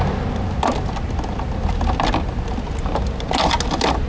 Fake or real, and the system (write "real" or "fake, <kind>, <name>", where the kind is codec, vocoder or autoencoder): real